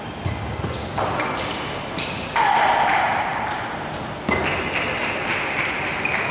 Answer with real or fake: real